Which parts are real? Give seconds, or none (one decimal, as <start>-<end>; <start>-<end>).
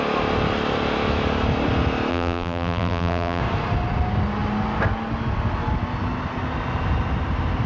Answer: 0.0-2.1; 3.4-7.7